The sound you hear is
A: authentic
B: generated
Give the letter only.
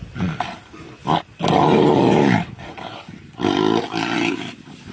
A